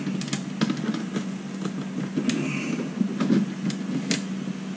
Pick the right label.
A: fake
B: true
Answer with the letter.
B